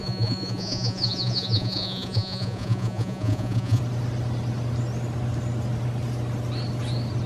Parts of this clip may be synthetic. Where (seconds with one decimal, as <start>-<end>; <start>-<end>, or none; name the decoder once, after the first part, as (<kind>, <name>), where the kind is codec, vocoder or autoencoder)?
0.0-3.8 (vocoder, Vocos)